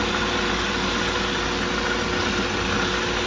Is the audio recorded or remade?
recorded